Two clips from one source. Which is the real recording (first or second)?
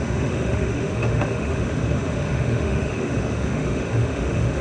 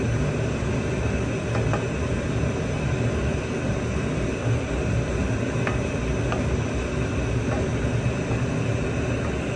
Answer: second